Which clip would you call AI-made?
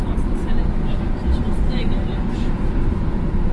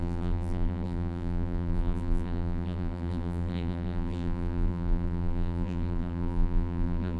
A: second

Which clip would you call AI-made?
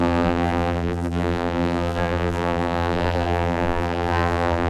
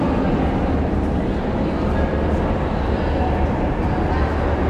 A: first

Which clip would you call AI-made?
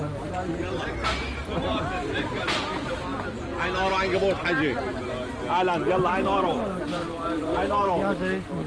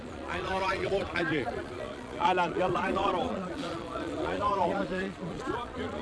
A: second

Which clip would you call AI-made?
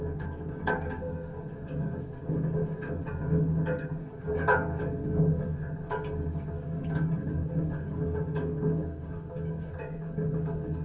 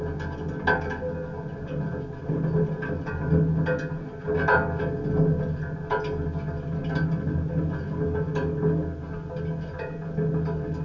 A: first